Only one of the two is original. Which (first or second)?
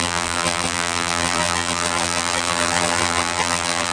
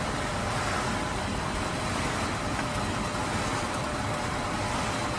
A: second